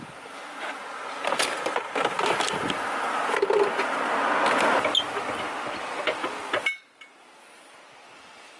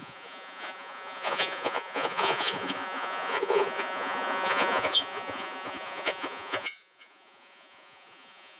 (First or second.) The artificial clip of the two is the second